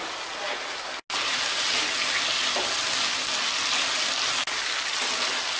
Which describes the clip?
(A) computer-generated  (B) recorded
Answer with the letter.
B